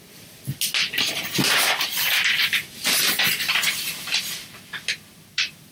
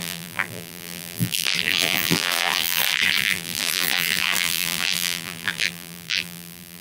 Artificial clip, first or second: second